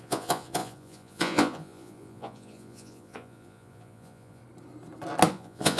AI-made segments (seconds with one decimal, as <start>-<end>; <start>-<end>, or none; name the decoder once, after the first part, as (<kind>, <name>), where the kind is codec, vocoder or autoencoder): 0.0-4.4 (vocoder, Vocos); 5.3-5.8